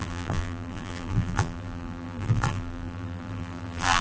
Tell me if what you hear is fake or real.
fake